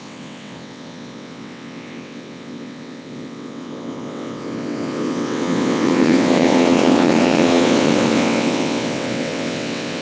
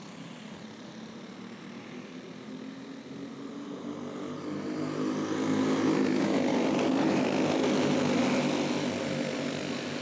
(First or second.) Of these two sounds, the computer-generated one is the first